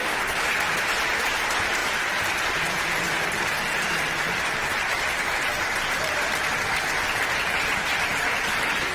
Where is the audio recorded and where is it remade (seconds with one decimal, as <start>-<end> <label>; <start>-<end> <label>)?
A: 0.0-1.8 recorded; 1.8-4.8 remade; 4.8-8.9 recorded